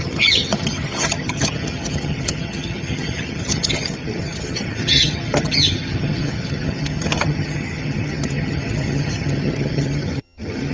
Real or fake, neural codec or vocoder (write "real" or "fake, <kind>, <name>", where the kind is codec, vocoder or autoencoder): fake, vocoder, HiFi-GAN